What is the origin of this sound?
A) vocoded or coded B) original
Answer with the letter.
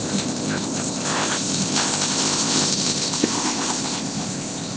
A